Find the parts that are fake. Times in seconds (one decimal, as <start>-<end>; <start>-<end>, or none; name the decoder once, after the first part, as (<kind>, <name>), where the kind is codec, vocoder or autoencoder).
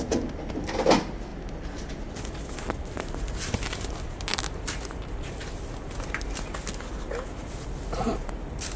none